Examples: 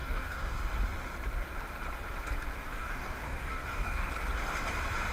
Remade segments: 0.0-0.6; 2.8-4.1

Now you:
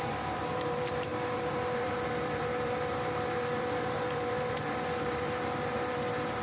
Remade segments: 0.0-6.4

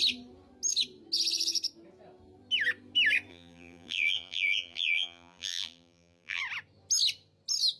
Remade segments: 3.3-6.4

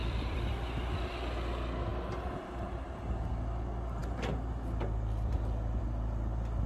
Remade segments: 0.0-0.5

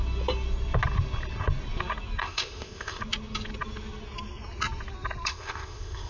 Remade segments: 2.2-3.0; 5.3-6.1

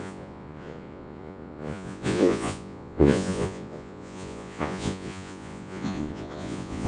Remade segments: 0.0-6.9